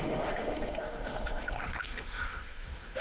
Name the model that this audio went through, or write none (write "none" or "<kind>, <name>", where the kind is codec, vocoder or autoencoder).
autoencoder, DAC-VAE